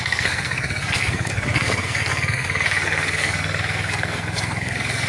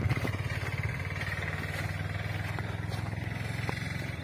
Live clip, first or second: second